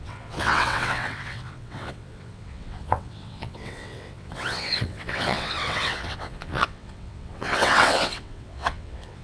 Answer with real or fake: fake